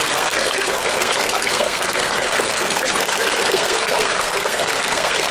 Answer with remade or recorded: remade